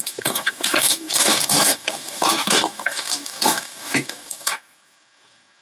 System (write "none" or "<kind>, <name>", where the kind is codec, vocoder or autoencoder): codec, DAC